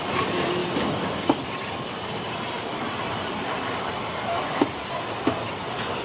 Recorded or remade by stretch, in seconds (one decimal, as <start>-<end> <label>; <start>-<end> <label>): 0.0-6.0 recorded